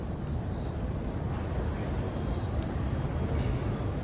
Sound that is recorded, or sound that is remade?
recorded